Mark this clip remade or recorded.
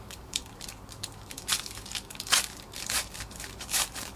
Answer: remade